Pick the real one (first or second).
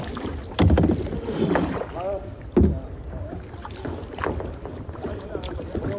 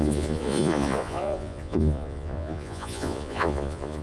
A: first